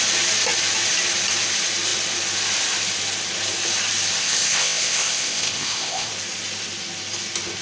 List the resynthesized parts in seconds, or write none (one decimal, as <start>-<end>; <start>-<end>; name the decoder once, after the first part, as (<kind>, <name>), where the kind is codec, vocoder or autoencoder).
4.2-6.1 (codec, ZipCodec)